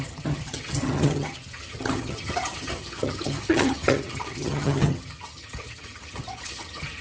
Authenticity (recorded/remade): remade